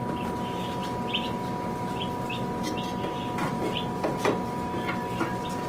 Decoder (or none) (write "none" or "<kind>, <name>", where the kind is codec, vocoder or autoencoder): none